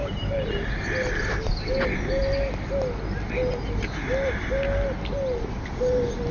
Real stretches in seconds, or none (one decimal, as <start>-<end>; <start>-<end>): 0.0-6.3